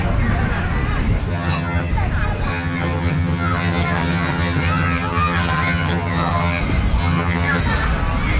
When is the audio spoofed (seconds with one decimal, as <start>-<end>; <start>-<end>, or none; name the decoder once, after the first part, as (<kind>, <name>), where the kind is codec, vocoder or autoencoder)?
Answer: 1.3-1.9 (vocoder, HiFi-GAN); 2.5-6.6; 7.0-7.6